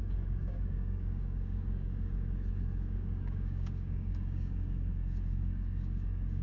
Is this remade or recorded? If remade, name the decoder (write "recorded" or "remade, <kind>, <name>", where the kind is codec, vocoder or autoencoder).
remade, codec, DAC